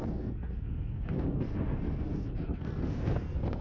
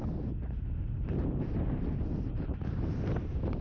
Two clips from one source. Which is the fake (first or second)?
first